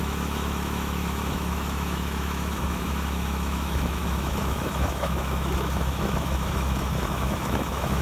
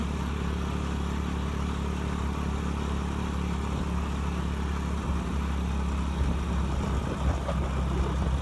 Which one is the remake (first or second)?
first